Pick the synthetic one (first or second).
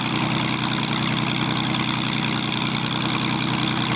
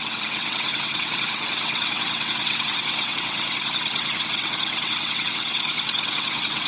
second